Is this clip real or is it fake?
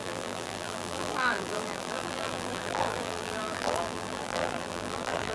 fake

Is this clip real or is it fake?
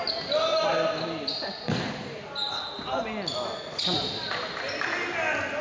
real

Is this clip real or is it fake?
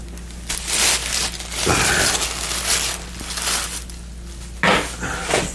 real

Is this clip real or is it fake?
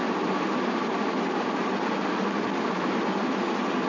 real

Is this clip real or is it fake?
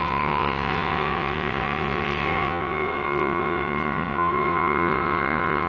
fake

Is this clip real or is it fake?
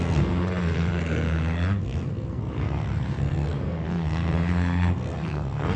fake